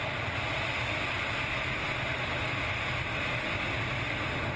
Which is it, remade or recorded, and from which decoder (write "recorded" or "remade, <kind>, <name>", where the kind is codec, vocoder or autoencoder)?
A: recorded